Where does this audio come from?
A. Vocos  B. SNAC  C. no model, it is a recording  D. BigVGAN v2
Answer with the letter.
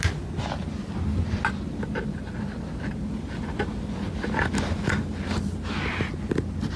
C